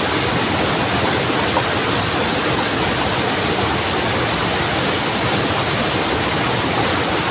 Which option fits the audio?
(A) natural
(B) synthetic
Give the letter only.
A